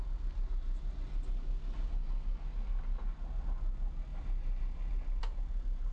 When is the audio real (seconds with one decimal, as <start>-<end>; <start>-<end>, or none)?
0.0-5.9